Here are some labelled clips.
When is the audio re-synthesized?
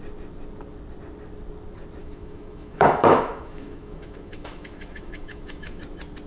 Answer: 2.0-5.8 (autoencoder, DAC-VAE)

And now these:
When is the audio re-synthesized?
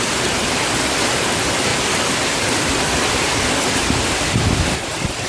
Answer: none